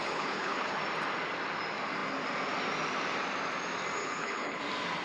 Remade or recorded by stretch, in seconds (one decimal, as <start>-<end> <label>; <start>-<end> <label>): 0.0-0.8 remade; 0.8-4.0 recorded; 4.0-4.6 remade; 4.6-5.0 recorded